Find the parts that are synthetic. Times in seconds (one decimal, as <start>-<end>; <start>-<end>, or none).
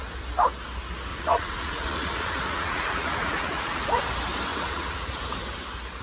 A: 1.1-4.0; 4.5-5.1